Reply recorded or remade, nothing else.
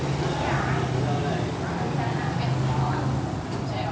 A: recorded